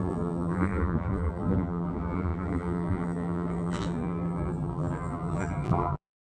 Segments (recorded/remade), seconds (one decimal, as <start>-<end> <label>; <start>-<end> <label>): 0.0-6.3 remade